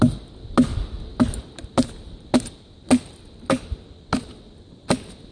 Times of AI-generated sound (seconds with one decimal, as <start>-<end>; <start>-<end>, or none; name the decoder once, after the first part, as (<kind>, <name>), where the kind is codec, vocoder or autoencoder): none